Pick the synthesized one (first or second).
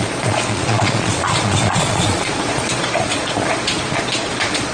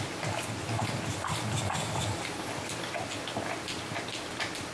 first